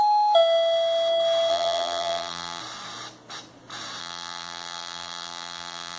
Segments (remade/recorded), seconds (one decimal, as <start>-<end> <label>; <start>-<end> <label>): 0.0-1.5 recorded; 1.5-2.6 remade; 2.6-4.0 recorded; 4.0-6.0 remade